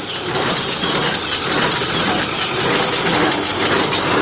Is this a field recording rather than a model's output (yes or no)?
yes